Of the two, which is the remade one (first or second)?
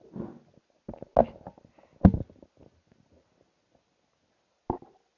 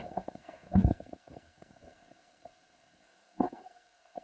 second